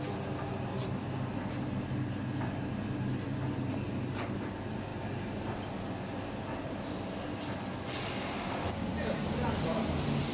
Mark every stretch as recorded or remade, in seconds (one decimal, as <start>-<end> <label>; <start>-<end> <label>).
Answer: 0.0-10.3 recorded